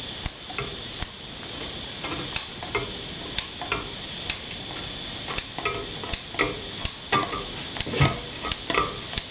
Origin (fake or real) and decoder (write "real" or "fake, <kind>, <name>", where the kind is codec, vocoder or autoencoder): real